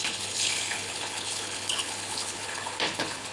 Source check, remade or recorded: remade